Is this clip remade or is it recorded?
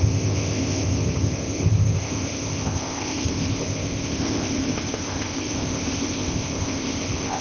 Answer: remade